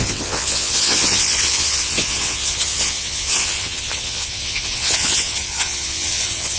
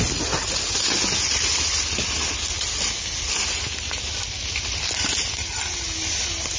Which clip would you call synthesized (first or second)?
first